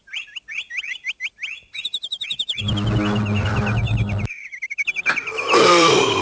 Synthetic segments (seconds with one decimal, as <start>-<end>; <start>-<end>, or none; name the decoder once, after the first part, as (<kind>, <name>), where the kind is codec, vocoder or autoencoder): 1.5-2.6 (vocoder, BigVGAN v2); 3.4-6.2